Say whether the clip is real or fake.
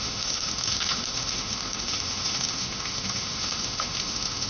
fake